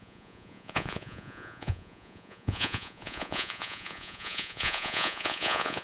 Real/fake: fake